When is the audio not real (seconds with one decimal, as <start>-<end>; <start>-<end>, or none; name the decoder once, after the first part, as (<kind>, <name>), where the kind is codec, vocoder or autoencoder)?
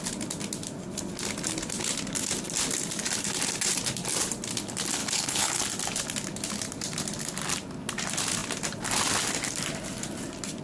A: 5.0-5.6 (codec, HILCodec)